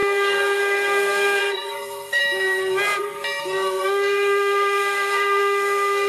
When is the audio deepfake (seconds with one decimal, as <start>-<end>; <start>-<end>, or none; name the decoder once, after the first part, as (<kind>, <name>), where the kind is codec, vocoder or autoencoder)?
0.0-2.2 (codec, SNAC); 3.4-6.1